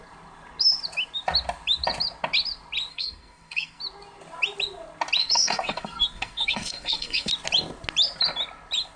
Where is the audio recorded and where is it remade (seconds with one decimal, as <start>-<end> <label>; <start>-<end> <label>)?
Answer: 0.0-2.9 recorded; 2.9-3.8 remade; 3.8-5.2 recorded; 5.2-7.3 remade; 7.3-9.0 recorded